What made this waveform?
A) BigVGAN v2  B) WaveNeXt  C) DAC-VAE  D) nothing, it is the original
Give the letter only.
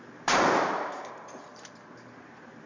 A